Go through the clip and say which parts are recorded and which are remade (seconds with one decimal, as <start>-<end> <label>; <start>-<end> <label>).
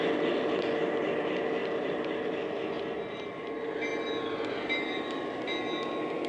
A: 0.0-1.6 recorded; 1.6-2.3 remade; 2.3-6.3 recorded